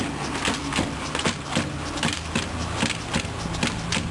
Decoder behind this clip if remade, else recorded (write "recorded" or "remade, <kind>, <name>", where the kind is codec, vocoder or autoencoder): recorded